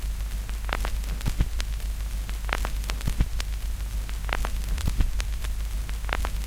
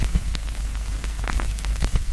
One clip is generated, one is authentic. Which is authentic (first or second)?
first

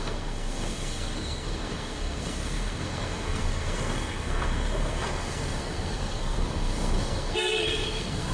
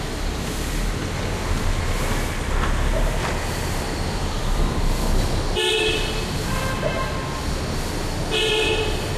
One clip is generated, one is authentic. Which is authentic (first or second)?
second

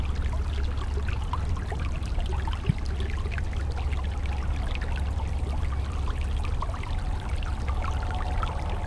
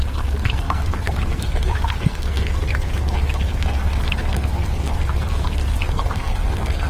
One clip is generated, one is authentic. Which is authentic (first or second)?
first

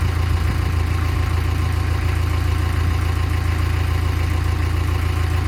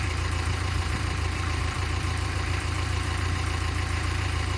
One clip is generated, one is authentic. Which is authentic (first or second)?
first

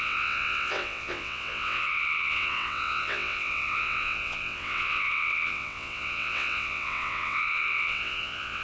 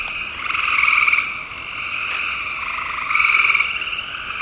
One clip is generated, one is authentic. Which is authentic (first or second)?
second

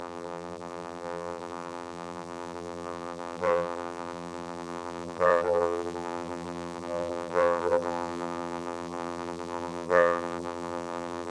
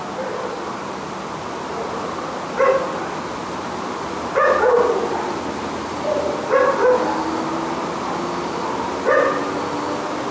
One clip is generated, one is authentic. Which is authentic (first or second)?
second